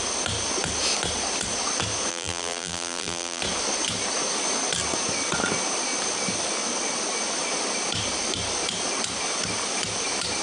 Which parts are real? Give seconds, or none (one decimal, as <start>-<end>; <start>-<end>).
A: 0.0-2.1; 3.4-10.4